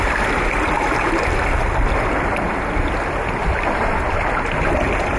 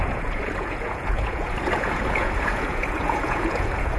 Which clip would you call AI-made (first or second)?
second